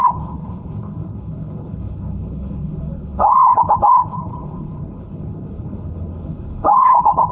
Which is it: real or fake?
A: fake